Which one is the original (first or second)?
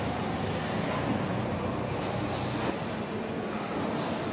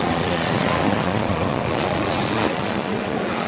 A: first